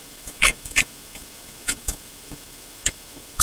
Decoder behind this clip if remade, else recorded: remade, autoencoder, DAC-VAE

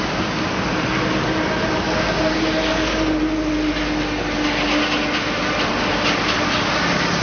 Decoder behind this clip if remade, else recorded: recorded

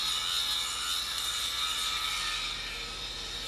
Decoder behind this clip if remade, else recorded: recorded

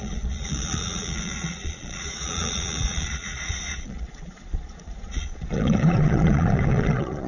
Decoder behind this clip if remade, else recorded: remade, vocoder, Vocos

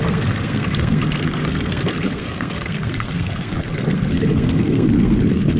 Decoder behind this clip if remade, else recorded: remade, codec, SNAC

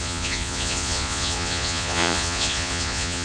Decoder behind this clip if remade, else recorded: remade, vocoder, Vocos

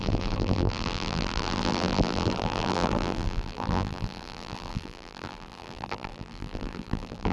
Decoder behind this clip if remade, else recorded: remade, vocoder, BigVGAN v2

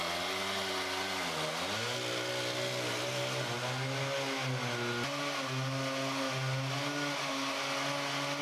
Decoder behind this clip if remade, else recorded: recorded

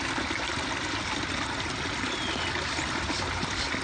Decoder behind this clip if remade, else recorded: recorded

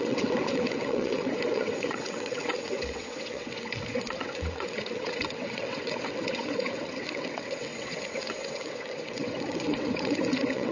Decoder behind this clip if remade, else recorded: remade, vocoder, WaveNeXt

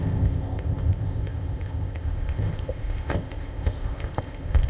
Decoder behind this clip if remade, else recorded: remade, codec, ZipCodec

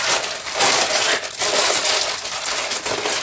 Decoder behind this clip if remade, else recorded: remade, vocoder, BigVGAN v2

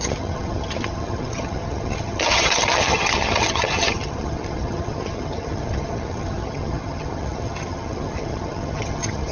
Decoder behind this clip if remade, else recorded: remade, vocoder, HiFi-GAN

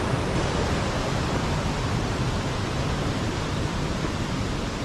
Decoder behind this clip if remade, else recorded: recorded